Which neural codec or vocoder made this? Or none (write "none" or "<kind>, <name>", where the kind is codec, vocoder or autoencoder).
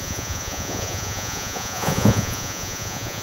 vocoder, Vocos